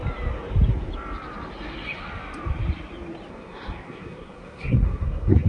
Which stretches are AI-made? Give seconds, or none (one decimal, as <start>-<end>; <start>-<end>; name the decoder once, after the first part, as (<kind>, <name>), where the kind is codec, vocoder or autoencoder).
3.3-5.5 (codec, SNAC)